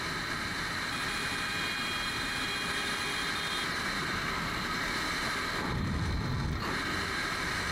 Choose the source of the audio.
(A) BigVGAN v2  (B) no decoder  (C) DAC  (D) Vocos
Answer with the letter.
B